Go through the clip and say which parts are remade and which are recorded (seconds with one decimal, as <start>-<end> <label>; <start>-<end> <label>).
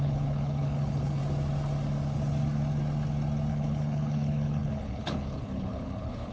0.0-1.2 remade; 1.2-3.5 recorded; 3.5-6.3 remade